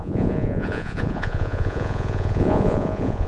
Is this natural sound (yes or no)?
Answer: no